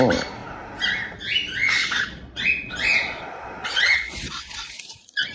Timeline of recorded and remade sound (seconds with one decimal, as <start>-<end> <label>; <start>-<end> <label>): 0.0-1.8 recorded; 1.8-5.3 remade